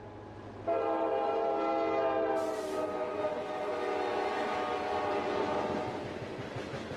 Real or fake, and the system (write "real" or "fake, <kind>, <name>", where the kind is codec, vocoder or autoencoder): real